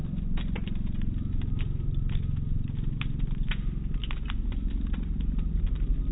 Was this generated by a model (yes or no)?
no